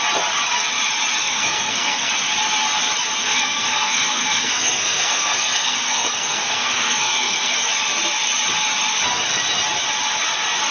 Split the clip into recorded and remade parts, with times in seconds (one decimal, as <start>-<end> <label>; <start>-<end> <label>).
0.0-1.2 recorded; 1.2-2.1 remade; 2.1-3.2 recorded; 3.2-7.7 remade; 7.7-10.7 recorded